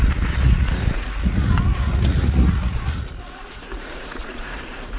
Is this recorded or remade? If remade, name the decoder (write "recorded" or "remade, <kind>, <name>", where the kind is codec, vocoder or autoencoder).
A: remade, vocoder, Vocos